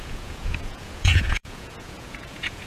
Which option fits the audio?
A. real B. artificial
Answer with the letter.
B